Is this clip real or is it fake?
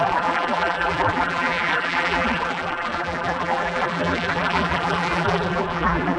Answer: fake